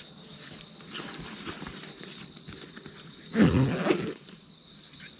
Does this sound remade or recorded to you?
recorded